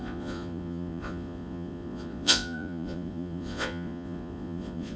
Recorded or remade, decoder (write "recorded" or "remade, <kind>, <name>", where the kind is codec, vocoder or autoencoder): remade, vocoder, Vocos